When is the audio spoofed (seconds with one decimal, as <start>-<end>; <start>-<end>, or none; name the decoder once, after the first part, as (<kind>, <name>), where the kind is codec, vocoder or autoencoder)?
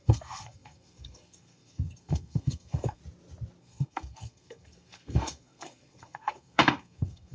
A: 0.0-3.0 (codec, SNAC); 3.6-7.3